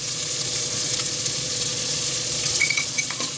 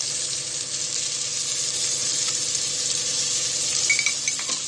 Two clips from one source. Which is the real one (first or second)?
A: second